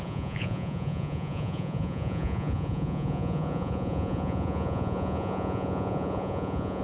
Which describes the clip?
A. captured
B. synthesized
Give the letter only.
B